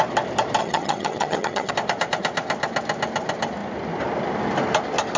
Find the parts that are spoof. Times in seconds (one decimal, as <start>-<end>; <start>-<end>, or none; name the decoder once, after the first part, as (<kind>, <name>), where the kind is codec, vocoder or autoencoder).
0.6-1.7 (vocoder, HiFi-GAN)